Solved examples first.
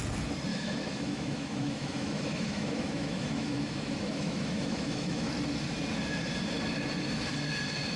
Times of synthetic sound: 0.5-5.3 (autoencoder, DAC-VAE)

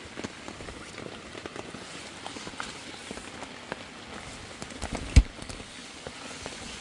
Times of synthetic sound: 1.5-2.1 (vocoder, Vocos); 5.8-6.8

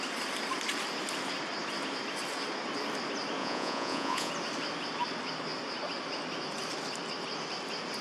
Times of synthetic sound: 3.4-4.3 (vocoder, Vocos)